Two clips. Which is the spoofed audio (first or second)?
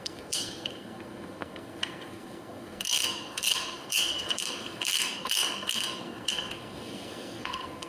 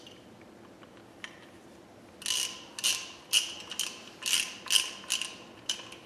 first